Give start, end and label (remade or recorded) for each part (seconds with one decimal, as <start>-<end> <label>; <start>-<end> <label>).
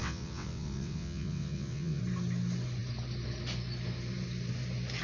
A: 0.0-2.0 remade; 2.0-5.0 recorded